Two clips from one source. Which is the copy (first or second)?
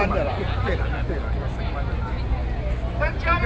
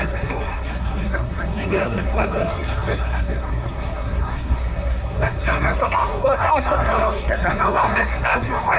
second